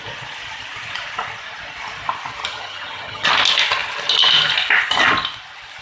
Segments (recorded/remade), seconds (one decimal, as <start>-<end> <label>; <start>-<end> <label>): 0.0-2.4 recorded; 2.4-3.3 remade; 3.3-5.8 recorded